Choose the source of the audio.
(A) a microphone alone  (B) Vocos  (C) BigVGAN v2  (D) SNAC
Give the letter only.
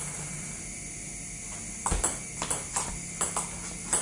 A